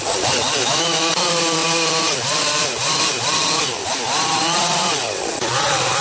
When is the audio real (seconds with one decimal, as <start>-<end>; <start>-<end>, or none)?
0.0-0.6; 1.1-6.0